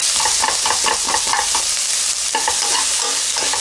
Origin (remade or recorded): recorded